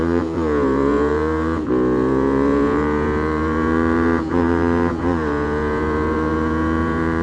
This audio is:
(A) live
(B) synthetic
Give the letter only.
B